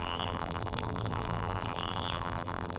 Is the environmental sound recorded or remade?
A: remade